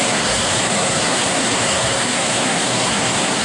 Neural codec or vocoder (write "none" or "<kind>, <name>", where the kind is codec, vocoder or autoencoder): codec, SNAC